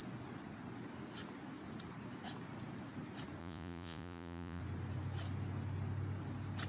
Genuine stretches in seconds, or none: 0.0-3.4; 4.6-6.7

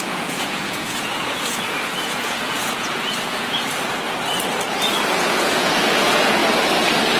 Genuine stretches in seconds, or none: 3.7-5.2; 6.4-7.2

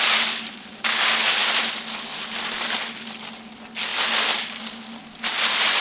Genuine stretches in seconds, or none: 0.0-5.8

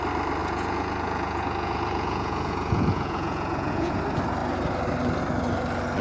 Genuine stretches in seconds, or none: 0.0-0.4; 4.0-6.0

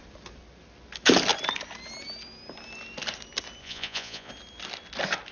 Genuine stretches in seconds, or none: 0.0-3.6; 4.3-5.3

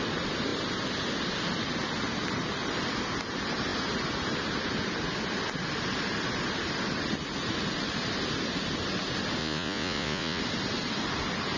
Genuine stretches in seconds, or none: 0.0-9.4; 10.4-11.6

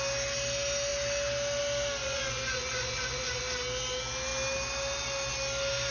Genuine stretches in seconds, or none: 0.0-2.0; 3.4-5.9

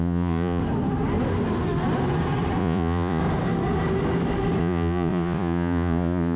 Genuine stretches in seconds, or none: 0.6-2.6; 3.2-4.6